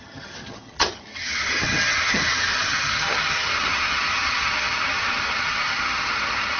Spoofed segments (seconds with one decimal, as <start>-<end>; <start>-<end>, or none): 0.0-6.6